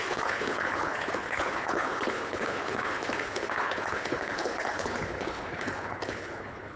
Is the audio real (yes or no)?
no